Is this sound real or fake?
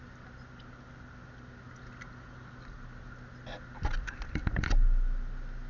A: real